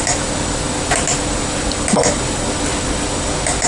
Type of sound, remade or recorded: recorded